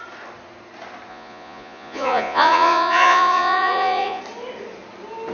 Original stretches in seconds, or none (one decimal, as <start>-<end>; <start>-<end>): 0.0-1.1; 4.2-5.3